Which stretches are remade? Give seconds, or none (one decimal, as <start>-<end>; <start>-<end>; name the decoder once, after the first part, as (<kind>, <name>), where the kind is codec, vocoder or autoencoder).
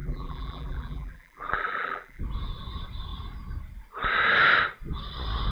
0.0-2.2 (vocoder, BigVGAN v2)